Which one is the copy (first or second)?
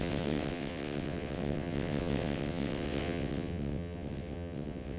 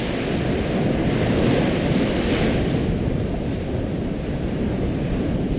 first